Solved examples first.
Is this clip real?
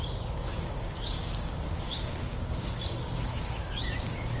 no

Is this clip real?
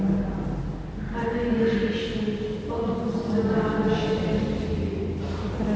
yes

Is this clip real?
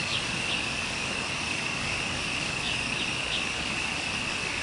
no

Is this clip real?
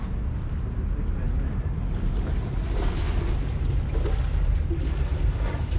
yes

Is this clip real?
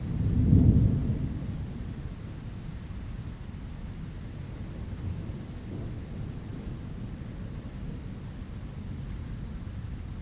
yes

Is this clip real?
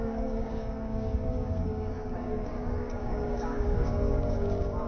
no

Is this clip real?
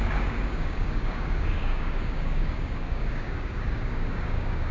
no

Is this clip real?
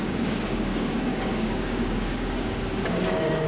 no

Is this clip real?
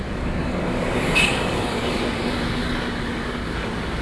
no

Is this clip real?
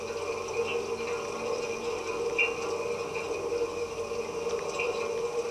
yes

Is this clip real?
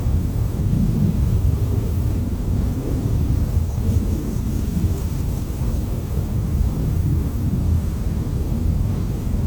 no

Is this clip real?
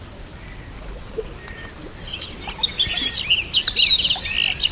yes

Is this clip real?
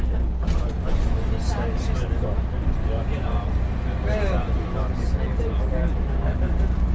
yes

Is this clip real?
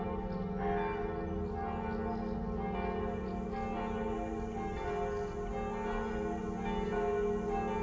yes